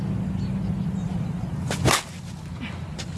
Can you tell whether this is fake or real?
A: real